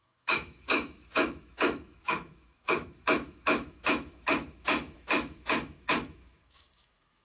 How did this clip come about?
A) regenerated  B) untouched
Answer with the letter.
A